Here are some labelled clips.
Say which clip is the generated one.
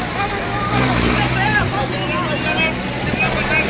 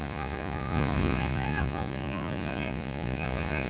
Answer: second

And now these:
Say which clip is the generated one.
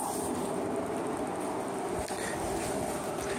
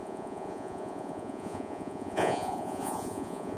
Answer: second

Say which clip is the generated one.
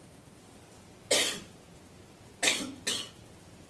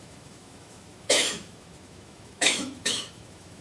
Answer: second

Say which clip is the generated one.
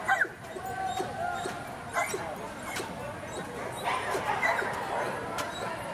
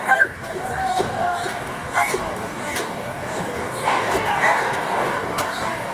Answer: second